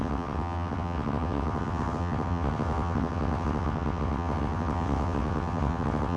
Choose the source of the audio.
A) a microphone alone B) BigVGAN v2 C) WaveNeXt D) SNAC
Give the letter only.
C